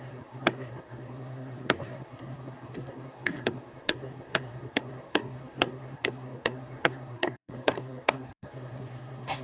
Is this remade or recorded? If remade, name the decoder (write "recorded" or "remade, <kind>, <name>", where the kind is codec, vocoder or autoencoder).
remade, codec, SNAC